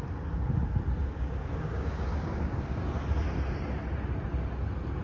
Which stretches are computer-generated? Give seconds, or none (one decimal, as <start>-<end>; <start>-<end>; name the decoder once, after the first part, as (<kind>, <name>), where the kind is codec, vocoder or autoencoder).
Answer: 1.0-2.8 (codec, DAC)